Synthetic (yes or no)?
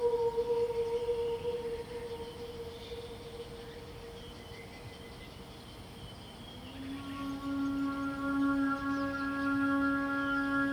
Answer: no